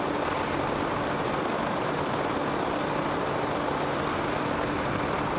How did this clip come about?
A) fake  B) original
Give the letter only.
B